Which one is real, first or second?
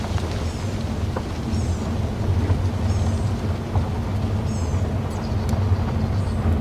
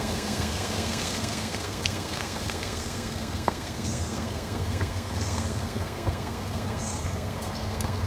first